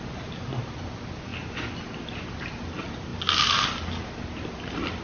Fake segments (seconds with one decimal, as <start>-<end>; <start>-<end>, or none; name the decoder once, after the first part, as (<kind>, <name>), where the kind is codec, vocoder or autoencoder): none